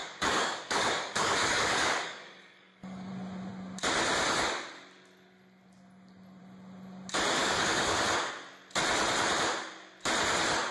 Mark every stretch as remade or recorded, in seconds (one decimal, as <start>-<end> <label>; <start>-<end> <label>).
0.0-3.1 remade; 3.1-7.4 recorded; 7.4-8.0 remade; 8.0-10.7 recorded

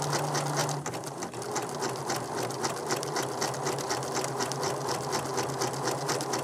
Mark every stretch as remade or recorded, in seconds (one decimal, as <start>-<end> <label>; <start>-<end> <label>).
0.0-6.4 recorded